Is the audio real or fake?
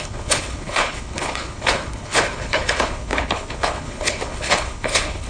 fake